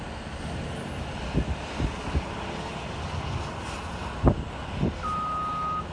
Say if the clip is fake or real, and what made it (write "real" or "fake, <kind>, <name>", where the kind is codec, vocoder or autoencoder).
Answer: real